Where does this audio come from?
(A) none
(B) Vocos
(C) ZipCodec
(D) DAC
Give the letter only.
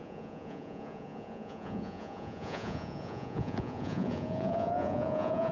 B